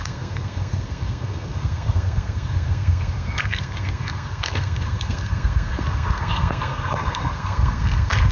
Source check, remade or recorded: remade